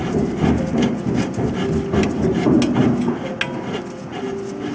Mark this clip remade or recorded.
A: recorded